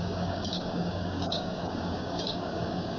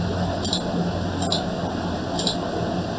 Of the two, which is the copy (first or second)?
first